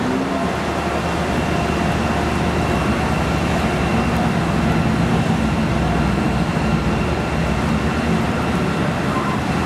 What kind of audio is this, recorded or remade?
recorded